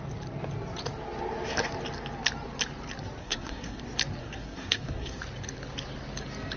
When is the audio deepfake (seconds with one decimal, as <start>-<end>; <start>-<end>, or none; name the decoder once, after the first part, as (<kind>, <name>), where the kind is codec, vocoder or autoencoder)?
3.2-3.8 (codec, SNAC); 4.2-5.2